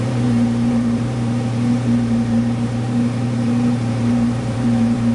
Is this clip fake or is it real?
fake